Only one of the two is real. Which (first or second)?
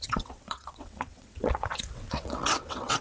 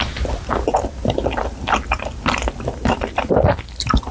second